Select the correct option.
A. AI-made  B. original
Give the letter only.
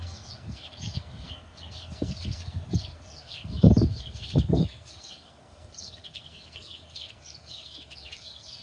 A